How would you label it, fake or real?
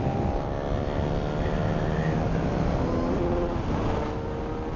real